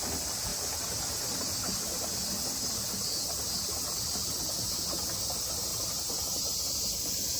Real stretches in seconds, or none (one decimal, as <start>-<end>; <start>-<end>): 0.0-5.7; 6.4-7.4